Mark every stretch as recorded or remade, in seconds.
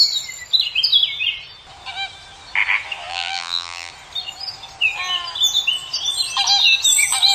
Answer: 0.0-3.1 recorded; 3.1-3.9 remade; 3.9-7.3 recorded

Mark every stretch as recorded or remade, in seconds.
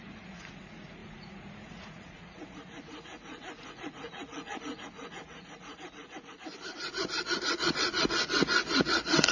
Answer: 0.0-6.5 remade; 6.5-7.4 recorded; 7.4-9.3 remade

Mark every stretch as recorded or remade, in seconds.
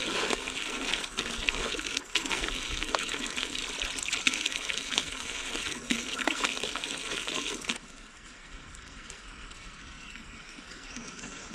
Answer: 0.0-3.6 remade; 3.6-4.2 recorded; 4.2-11.5 remade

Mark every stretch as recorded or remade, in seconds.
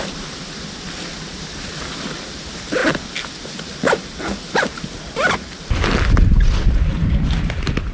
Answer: 0.0-2.8 remade; 2.8-7.1 recorded; 7.1-7.9 remade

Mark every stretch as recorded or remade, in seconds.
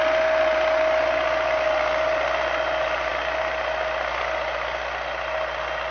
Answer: 0.0-5.9 recorded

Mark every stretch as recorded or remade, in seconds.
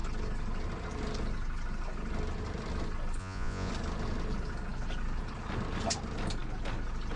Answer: 0.0-3.2 recorded; 3.2-3.7 remade; 3.7-7.2 recorded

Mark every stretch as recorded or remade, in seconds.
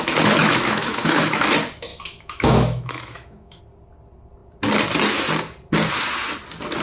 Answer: 0.0-0.4 recorded; 0.4-1.4 remade; 1.4-1.9 recorded; 1.9-3.6 remade; 3.6-6.8 recorded